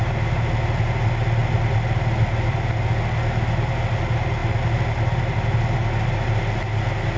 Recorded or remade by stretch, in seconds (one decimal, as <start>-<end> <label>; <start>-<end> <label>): 0.0-7.2 recorded